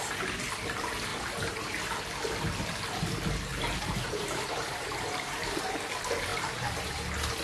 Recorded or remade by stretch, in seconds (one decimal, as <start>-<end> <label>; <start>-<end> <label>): 0.0-1.1 recorded; 1.1-1.7 remade; 1.7-3.5 recorded; 3.5-5.6 remade; 5.6-6.3 recorded; 6.3-6.9 remade; 6.9-7.4 recorded